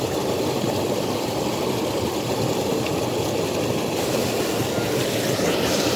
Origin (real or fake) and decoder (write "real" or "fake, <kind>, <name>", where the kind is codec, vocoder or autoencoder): real